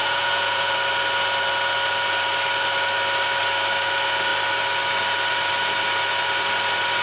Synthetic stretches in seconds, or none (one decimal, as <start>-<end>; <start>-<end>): 0.0-0.7